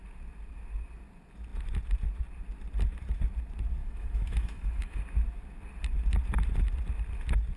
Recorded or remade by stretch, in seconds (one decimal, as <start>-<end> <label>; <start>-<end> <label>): 0.0-3.8 recorded; 3.8-5.0 remade; 5.0-7.6 recorded